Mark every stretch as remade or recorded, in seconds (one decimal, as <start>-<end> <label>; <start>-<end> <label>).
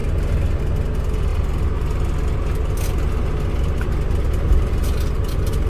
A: 0.0-0.6 remade; 0.6-5.7 recorded